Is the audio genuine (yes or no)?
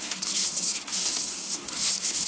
no